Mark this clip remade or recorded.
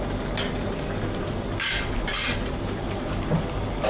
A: recorded